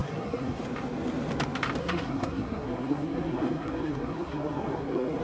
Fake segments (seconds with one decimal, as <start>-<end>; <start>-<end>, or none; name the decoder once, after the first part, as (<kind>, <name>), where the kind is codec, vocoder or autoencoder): 0.0-0.6 (codec, SNAC); 1.8-5.2

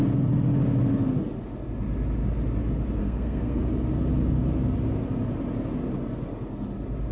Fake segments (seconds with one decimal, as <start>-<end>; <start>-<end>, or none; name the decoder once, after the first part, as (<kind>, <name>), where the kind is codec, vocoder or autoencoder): 3.0-3.6 (codec, SNAC)

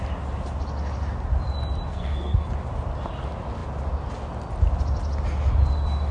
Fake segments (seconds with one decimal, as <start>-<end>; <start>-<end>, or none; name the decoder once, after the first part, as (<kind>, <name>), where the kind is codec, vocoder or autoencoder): 1.9-2.5 (codec, SNAC)

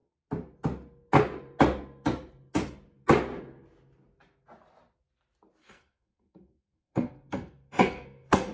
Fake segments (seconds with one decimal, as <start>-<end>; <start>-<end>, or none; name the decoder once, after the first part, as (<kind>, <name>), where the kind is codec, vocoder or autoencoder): 5.6-8.5 (codec, SNAC)

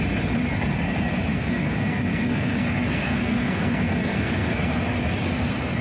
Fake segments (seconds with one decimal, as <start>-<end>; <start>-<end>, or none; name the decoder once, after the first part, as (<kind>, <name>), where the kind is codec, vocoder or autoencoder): 1.3-4.8 (codec, SNAC)

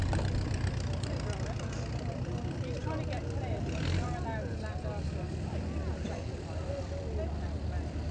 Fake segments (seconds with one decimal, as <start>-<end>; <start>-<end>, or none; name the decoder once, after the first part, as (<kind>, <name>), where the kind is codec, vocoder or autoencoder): none

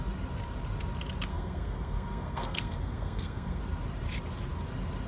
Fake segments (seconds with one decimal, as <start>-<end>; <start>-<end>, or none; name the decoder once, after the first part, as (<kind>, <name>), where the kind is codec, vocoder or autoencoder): 1.3-3.6 (codec, SNAC)

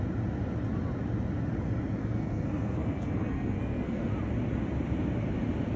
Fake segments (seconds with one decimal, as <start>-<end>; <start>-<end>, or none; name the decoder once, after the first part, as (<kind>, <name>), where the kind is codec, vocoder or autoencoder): 2.0-4.1 (codec, SNAC)